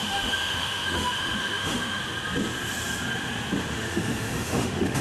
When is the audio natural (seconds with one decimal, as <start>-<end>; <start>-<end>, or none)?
2.0-3.7